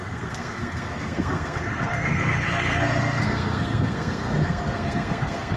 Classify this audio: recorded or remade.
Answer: remade